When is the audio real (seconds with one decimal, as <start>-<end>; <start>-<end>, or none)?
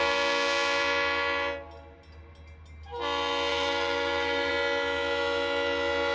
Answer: 0.0-3.5; 4.5-6.1